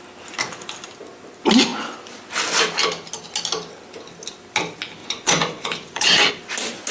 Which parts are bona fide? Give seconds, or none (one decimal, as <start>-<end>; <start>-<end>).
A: 0.0-5.0; 6.3-6.9